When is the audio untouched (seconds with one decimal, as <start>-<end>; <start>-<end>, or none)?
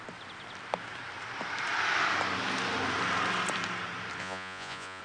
0.0-4.2